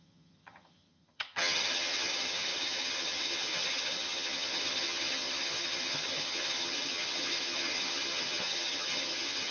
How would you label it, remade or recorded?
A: remade